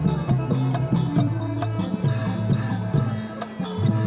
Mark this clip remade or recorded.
recorded